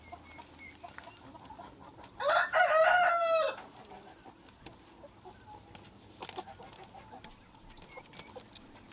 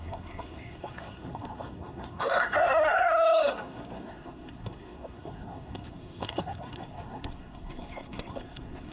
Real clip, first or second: first